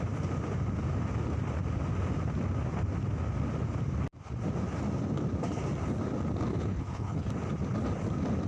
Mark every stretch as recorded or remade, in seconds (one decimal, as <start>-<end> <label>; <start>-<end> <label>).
0.0-6.5 recorded; 6.5-7.3 remade; 7.3-8.5 recorded